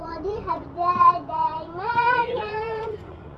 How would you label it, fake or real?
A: fake